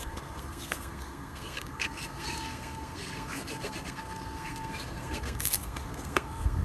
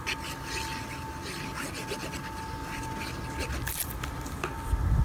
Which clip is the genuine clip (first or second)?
second